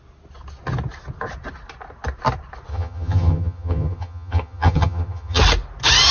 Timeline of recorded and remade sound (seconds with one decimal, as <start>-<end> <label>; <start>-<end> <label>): 0.0-2.7 recorded; 2.7-5.4 remade; 5.4-6.1 recorded